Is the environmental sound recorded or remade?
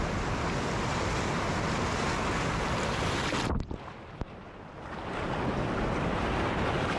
recorded